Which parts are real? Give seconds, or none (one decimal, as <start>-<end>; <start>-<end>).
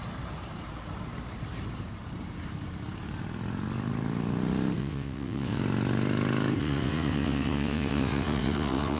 0.0-4.8; 5.6-6.6